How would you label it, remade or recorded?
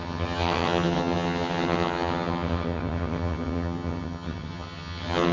remade